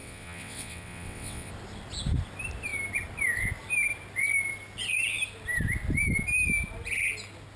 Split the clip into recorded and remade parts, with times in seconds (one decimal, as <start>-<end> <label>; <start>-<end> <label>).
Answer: 0.0-1.5 remade; 1.5-7.6 recorded